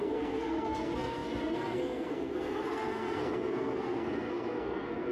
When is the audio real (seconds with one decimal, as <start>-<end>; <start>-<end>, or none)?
none